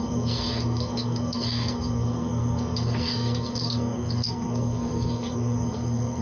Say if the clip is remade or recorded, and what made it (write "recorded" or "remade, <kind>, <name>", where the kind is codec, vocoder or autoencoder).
remade, codec, SNAC